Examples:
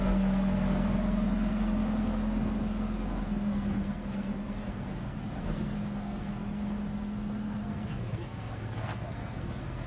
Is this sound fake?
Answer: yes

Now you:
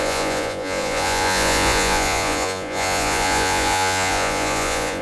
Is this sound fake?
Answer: yes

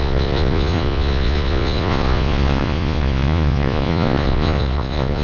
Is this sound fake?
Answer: yes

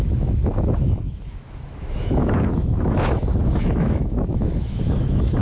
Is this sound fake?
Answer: yes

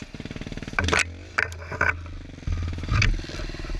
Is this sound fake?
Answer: no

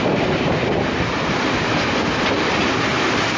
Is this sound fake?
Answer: no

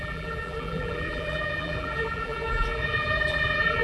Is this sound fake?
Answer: yes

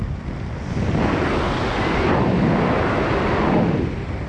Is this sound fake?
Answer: no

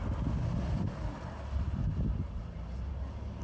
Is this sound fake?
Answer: no